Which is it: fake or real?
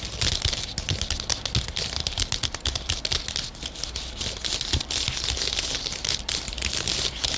real